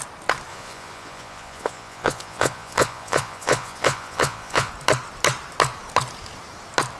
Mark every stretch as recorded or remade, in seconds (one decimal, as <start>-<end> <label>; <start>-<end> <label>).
0.0-0.5 recorded; 0.5-4.7 remade; 4.7-7.0 recorded